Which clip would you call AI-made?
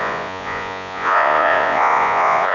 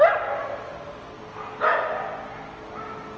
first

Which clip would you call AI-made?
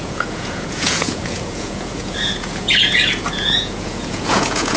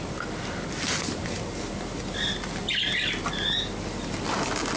first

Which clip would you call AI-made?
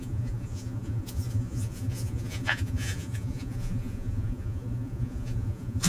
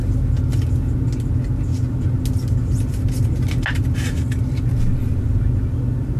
first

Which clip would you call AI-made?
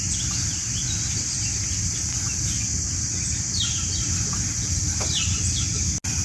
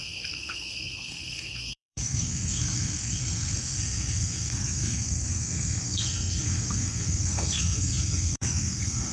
second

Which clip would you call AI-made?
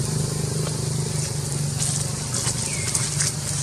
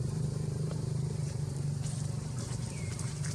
second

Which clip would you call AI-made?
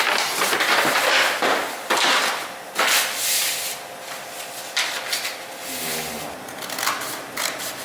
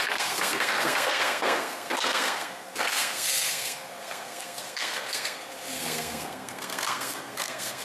second